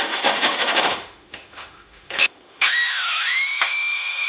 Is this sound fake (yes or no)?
yes